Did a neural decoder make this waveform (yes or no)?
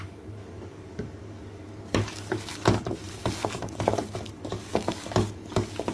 yes